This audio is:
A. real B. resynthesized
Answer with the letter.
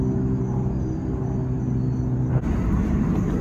A